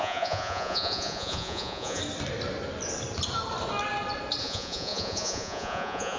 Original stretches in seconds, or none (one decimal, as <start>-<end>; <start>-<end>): 2.0-4.4